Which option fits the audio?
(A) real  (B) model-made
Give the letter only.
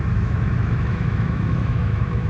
B